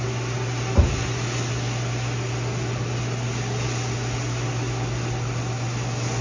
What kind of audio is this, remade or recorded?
recorded